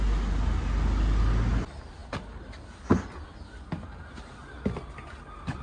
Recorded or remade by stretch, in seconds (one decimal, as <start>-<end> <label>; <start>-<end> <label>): 0.0-5.6 recorded